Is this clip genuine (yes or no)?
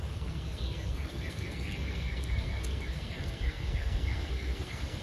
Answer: no